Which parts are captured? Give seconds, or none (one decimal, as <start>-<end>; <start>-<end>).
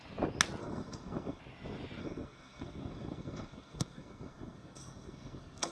0.0-0.6; 1.4-2.0